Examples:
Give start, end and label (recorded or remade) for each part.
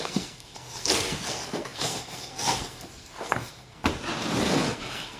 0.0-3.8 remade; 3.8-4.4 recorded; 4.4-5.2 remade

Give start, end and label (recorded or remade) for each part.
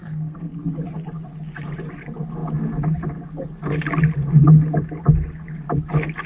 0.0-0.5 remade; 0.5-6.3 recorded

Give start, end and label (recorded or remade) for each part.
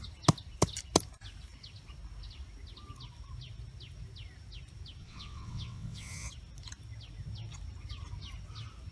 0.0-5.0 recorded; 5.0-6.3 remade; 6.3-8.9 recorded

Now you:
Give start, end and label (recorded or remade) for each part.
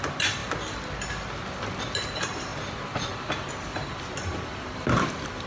0.0-0.4 remade; 0.4-1.8 recorded; 1.8-5.5 remade